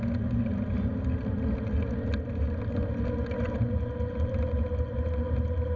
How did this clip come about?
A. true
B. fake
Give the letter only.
A